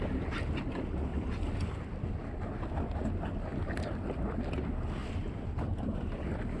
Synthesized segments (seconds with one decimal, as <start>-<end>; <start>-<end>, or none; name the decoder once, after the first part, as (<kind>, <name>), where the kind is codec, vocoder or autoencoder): 1.1-2.7 (vocoder, BigVGAN v2); 5.0-6.0